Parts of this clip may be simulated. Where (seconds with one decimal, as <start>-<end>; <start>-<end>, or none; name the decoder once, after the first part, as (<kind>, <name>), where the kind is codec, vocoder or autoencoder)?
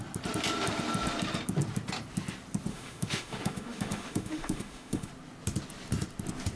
2.7-5.1 (autoencoder, DAC-VAE)